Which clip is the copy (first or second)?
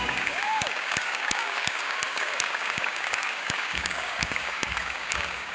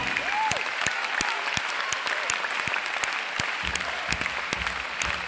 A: first